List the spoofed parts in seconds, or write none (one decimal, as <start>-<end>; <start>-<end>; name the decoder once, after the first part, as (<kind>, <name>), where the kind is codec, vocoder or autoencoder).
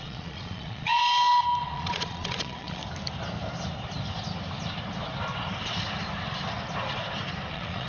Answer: 0.0-1.0 (vocoder, Vocos); 1.6-2.8; 7.5-7.9